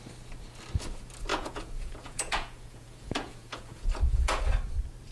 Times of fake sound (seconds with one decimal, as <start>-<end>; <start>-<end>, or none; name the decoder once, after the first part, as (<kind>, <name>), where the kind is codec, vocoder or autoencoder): 1.3-4.4 (vocoder, Vocos)